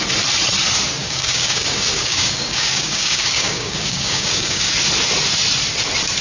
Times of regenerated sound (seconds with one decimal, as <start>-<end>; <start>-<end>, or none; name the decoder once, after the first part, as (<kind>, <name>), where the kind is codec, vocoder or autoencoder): 1.0-4.7 (codec, DAC)